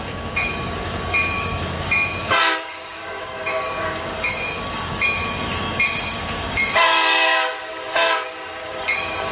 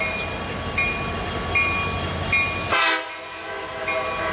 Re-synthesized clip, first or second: first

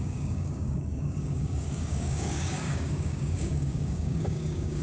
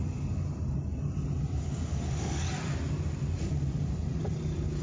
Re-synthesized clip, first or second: first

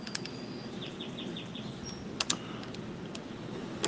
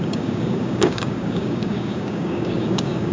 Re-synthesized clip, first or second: second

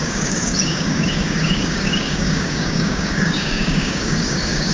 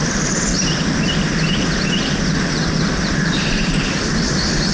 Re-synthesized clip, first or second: first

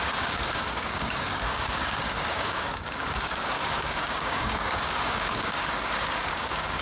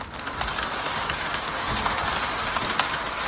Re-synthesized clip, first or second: first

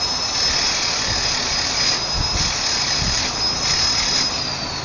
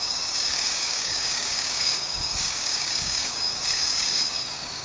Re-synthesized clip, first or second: second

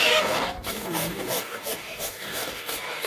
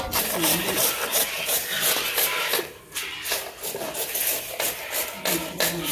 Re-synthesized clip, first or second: first